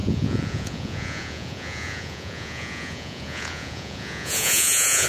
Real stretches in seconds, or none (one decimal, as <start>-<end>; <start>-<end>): none